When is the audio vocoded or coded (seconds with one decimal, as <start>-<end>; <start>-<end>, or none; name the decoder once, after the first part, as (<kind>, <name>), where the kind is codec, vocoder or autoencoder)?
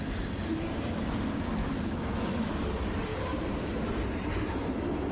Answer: 1.6-2.5 (autoencoder, DAC-VAE)